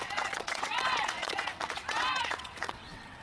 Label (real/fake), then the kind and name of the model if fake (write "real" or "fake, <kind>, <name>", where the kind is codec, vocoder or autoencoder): fake, vocoder, WaveNeXt